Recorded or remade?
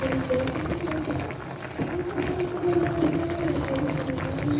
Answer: recorded